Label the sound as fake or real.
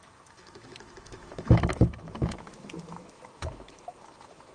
fake